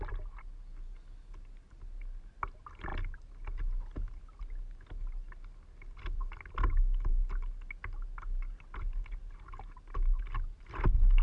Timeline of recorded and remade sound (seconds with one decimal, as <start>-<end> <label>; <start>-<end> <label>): 0.0-11.2 recorded